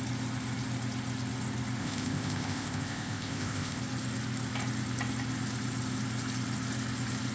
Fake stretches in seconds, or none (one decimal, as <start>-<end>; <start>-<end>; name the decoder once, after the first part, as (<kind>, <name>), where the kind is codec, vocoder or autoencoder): 1.8-3.8 (codec, ZipCodec)